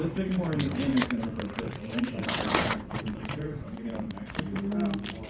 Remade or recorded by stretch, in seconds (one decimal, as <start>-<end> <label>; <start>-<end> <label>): 0.0-0.9 recorded; 0.9-4.1 remade; 4.1-5.3 recorded